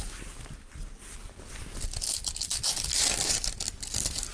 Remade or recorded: recorded